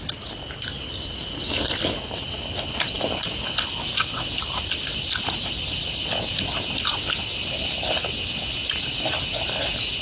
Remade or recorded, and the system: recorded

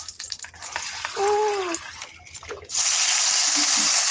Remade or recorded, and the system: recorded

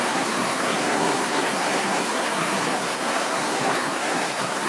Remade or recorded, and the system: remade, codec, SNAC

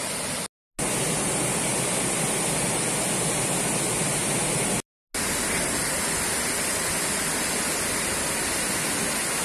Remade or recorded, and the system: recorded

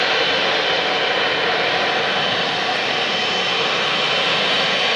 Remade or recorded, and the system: recorded